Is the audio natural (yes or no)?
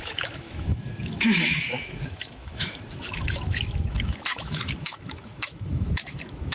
no